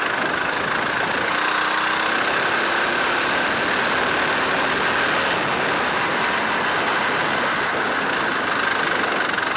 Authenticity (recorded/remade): recorded